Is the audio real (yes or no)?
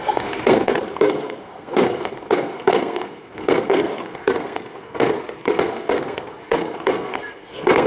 no